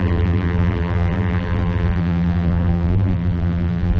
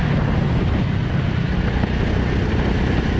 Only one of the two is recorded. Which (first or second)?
second